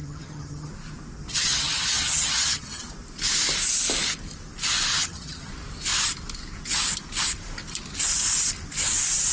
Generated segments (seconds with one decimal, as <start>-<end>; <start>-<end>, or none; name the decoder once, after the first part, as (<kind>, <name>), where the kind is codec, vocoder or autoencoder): 0.0-0.7 (vocoder, HiFi-GAN); 1.3-2.8; 4.9-5.5